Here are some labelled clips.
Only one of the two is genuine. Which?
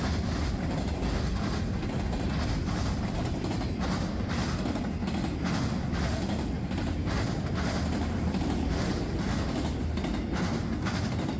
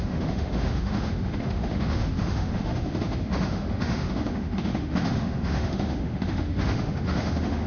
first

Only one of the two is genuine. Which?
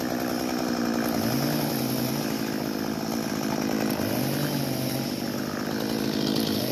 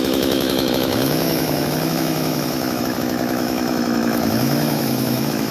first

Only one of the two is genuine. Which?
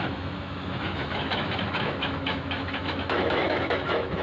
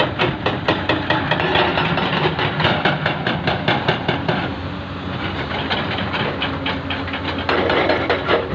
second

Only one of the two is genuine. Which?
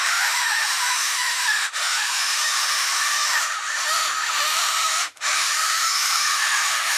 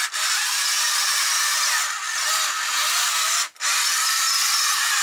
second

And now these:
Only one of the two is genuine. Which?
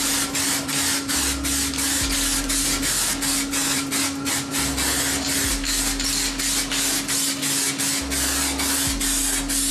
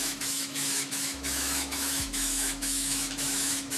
first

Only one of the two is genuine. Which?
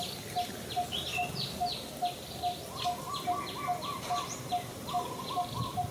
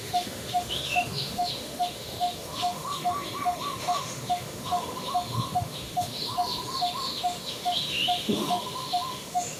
first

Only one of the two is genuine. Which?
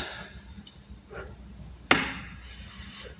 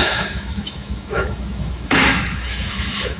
first